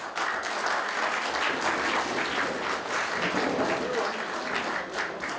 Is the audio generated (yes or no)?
no